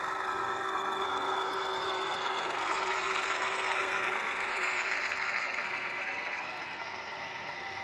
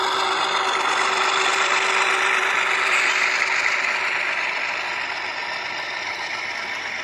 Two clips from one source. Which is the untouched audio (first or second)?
second